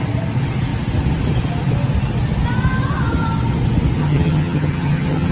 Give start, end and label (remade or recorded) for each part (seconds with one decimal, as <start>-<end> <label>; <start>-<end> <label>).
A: 0.0-4.0 recorded; 4.0-5.3 remade